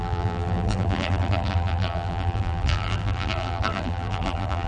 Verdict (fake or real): fake